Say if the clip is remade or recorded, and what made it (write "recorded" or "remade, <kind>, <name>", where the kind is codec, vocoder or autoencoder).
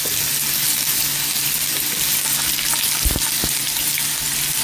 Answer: recorded